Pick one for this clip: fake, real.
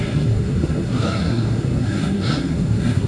fake